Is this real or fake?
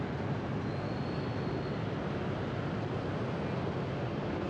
real